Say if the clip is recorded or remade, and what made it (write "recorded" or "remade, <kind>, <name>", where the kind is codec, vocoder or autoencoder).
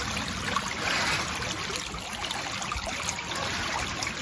recorded